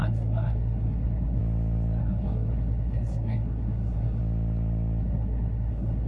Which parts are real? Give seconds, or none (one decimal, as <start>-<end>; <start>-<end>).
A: 1.4-2.0; 4.2-5.0